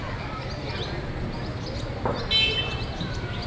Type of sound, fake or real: real